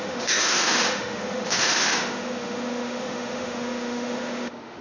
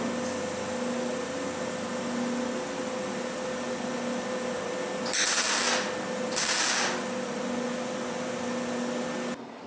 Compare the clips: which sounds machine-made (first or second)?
first